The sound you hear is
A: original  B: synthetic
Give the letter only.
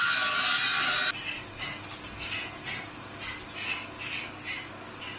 A